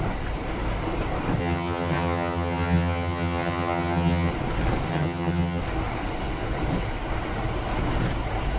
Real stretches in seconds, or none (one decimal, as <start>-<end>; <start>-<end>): 0.0-1.4; 4.3-4.9; 5.6-8.6